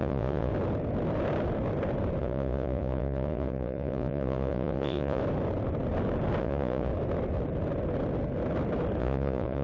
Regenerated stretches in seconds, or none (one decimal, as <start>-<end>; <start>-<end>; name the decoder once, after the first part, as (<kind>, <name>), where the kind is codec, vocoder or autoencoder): 0.0-0.5 (vocoder, Vocos); 2.2-5.2; 6.4-6.9; 9.0-9.6